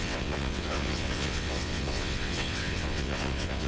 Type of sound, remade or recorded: remade